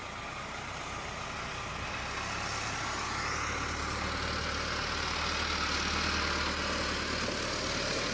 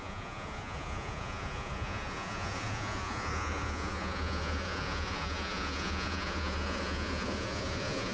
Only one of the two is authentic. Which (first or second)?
first